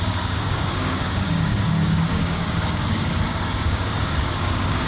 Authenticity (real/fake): fake